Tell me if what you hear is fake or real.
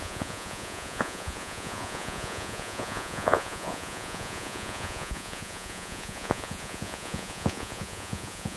fake